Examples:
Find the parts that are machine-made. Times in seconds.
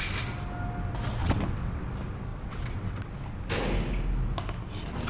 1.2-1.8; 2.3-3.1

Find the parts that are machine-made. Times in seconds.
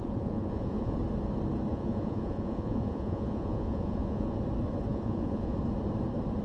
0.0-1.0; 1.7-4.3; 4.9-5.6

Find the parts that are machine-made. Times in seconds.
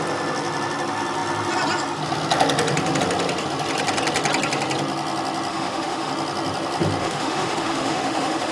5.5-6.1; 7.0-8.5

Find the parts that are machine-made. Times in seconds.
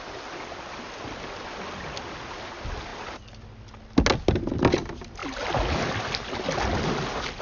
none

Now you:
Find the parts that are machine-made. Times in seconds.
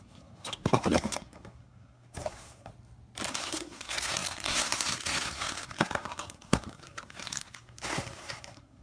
0.0-2.7; 3.3-8.8